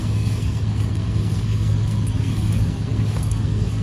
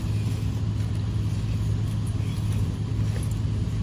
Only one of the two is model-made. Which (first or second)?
first